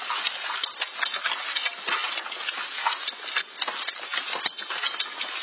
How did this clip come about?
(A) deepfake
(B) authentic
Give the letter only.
B